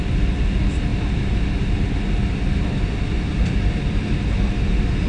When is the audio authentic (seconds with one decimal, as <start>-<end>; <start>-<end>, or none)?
0.0-5.1